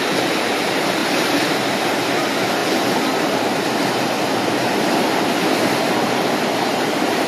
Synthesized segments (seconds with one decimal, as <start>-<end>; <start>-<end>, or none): 1.0-2.1